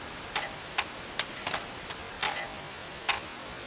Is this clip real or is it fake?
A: real